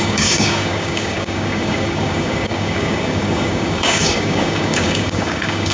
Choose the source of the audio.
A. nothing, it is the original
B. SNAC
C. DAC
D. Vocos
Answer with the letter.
C